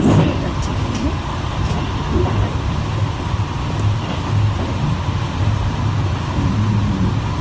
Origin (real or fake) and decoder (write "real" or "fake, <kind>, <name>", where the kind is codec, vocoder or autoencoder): real